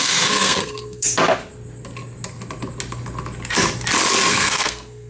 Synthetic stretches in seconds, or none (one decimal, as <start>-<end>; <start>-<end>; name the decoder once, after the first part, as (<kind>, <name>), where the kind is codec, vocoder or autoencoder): 0.0-1.2 (codec, SNAC); 4.3-5.1